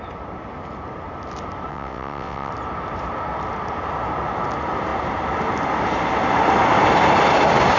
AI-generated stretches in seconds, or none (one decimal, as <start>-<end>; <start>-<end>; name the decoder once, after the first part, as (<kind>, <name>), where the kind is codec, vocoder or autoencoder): 1.7-2.5 (vocoder, WaveNeXt)